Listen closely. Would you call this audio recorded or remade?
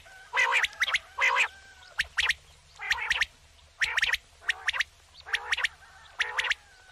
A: recorded